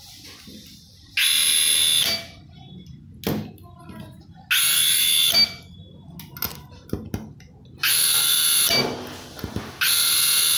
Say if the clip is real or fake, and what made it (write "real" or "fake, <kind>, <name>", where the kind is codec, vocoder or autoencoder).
real